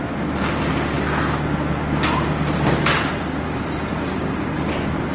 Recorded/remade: recorded